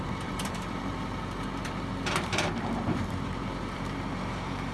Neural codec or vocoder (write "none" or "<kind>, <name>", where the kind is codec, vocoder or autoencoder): vocoder, BigVGAN v2